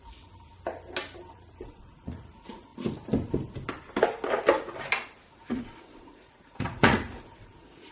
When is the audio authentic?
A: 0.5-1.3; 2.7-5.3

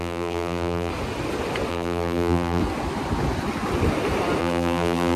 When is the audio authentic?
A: 0.9-1.7; 2.6-4.4

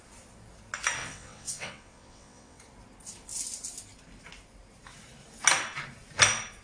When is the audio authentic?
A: 0.0-1.0; 2.6-6.6